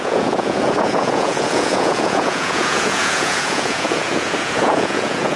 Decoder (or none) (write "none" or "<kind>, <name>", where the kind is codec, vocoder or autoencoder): vocoder, Vocos